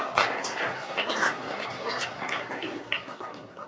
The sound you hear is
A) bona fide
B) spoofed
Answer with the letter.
B